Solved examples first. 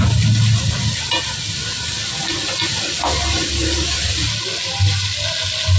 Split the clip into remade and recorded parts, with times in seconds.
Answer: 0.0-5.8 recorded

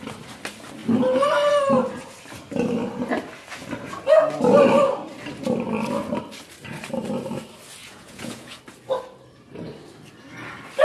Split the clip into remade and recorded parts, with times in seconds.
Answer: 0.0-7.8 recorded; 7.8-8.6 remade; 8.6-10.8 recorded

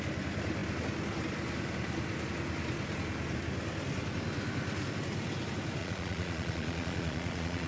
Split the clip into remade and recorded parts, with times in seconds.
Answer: 0.0-5.8 recorded; 5.8-7.7 remade